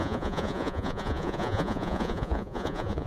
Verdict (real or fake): fake